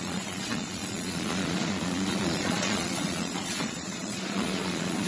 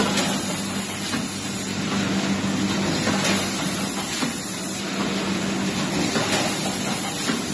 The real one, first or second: second